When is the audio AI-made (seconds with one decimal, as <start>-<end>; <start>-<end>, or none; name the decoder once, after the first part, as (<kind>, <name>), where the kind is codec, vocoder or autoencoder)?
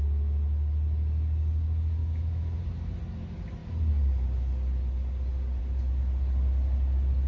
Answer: 2.0-2.6 (autoencoder, DAC-VAE)